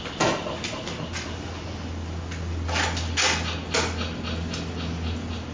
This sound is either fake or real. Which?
real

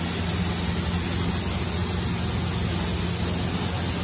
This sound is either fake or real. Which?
real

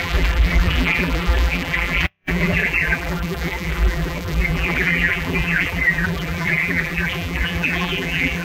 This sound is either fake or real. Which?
fake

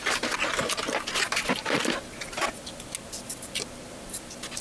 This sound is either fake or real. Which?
real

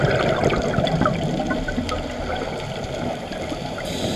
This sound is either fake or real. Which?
real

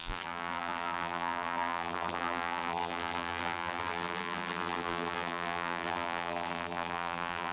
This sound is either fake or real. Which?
fake